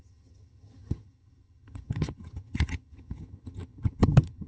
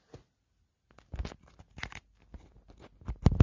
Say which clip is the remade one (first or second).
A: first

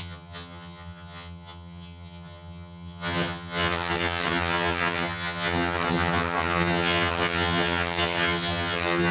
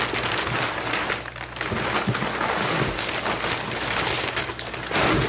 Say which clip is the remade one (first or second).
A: first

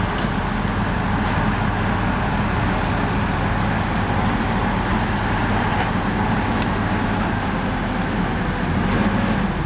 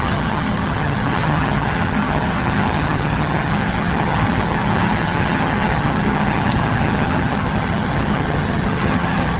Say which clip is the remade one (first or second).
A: second